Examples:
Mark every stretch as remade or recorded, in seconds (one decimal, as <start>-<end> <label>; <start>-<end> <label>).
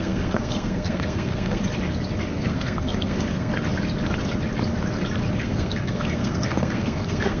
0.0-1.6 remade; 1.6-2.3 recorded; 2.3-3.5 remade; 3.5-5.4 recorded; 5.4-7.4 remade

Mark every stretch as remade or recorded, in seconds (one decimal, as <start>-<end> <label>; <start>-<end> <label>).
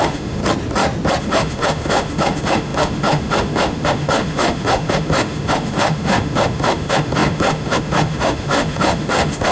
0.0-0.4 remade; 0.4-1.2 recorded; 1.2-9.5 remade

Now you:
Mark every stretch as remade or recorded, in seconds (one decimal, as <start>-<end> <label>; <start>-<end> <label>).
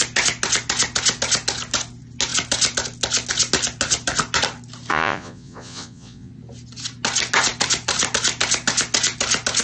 0.0-4.9 recorded; 4.9-6.3 remade; 6.3-9.6 recorded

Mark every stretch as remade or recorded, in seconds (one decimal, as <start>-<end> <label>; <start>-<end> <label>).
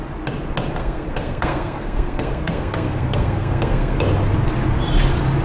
0.0-0.8 recorded; 0.8-4.0 remade; 4.0-5.4 recorded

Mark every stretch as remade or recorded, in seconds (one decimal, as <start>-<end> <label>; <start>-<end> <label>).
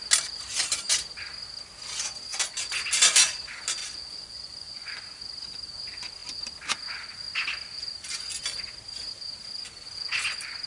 0.0-3.8 recorded; 3.8-5.0 remade; 5.0-10.7 recorded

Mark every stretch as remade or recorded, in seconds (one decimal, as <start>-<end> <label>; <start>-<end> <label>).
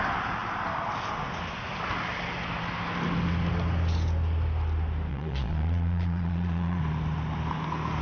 0.0-5.1 recorded; 5.1-6.8 remade; 6.8-8.0 recorded